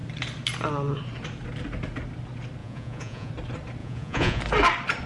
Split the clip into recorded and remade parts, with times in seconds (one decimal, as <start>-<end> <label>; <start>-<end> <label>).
0.0-2.6 recorded; 2.6-3.3 remade; 3.3-3.8 recorded; 3.8-4.4 remade; 4.4-5.1 recorded